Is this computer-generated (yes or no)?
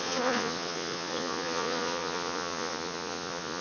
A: yes